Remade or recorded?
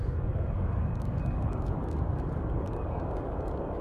remade